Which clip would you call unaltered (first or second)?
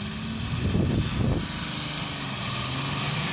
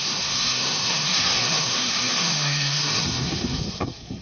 first